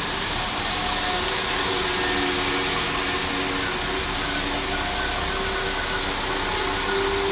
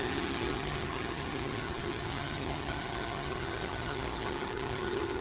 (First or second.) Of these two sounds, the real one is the first